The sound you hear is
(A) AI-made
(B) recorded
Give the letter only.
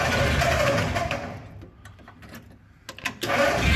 B